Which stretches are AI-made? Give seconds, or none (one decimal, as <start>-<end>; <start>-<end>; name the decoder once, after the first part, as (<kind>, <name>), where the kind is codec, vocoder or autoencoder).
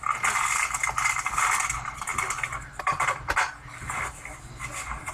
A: 2.1-3.5 (vocoder, BigVGAN v2)